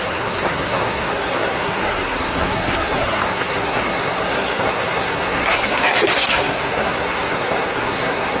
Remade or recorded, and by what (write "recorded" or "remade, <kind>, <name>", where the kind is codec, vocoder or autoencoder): remade, codec, SNAC